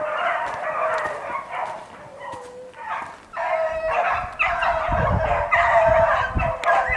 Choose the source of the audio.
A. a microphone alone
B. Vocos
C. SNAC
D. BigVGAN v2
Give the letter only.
A